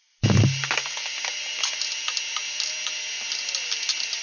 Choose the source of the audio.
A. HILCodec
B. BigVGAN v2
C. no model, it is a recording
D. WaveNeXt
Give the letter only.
C